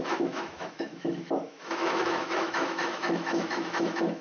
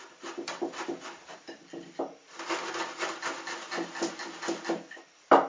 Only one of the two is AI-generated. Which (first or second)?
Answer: first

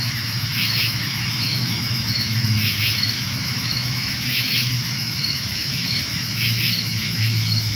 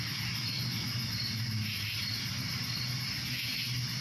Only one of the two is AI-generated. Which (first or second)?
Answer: first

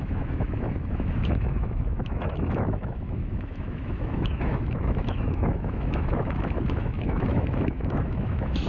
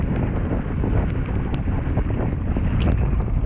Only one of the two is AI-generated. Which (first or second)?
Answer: first